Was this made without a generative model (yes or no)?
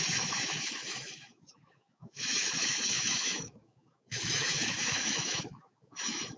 no